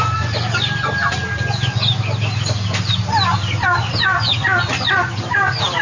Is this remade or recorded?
recorded